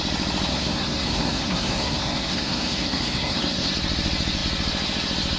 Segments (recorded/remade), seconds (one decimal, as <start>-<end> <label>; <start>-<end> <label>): 0.0-0.5 recorded; 0.5-3.7 remade; 3.7-5.4 recorded